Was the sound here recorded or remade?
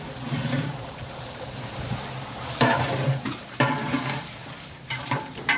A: remade